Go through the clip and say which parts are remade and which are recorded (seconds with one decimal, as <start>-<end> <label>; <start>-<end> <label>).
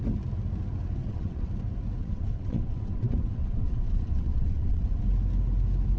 0.0-1.0 recorded; 1.0-1.5 remade; 1.5-2.0 recorded; 2.0-5.0 remade; 5.0-6.0 recorded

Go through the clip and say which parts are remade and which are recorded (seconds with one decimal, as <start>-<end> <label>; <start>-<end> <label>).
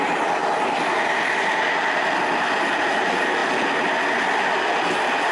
0.0-5.3 recorded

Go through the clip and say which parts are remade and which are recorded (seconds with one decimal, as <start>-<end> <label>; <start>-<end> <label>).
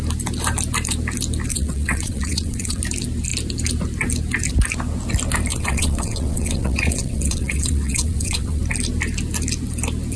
0.0-1.5 recorded; 1.5-2.8 remade; 2.8-5.5 recorded; 5.5-8.6 remade; 8.6-10.2 recorded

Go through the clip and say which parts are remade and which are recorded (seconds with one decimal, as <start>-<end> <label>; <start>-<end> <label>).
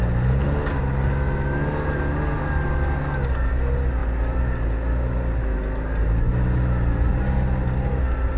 0.0-8.4 recorded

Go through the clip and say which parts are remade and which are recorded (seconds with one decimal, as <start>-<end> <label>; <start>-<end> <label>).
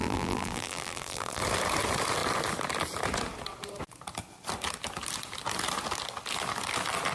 0.0-1.4 remade; 1.4-7.1 recorded